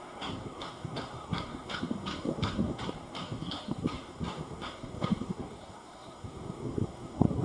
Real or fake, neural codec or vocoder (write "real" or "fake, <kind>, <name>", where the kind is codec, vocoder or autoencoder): fake, codec, SNAC